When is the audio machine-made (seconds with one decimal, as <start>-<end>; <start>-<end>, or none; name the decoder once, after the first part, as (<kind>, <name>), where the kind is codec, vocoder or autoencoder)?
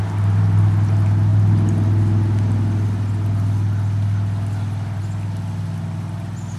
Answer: none